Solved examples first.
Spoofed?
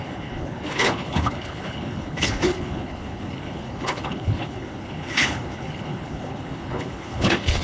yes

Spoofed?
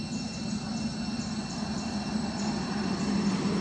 no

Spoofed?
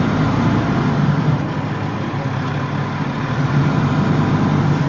no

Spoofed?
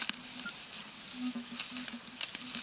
no